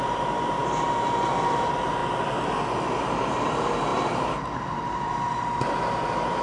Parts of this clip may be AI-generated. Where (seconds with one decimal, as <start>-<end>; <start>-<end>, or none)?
0.0-2.0; 3.1-6.4